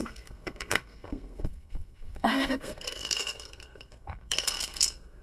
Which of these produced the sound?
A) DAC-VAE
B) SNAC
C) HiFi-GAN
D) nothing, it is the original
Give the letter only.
B